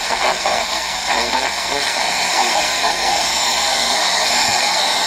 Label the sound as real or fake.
fake